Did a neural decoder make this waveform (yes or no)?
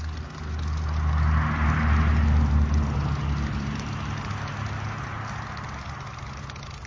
no